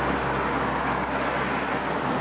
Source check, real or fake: real